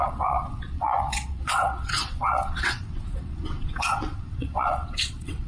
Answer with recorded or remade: remade